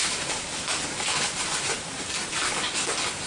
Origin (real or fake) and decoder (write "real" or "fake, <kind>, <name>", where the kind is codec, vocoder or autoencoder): real